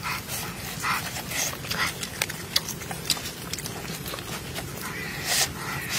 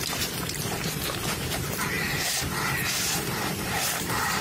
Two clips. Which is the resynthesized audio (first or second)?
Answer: second